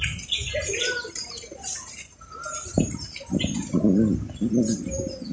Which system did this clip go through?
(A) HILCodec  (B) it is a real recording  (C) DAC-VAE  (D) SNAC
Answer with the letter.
B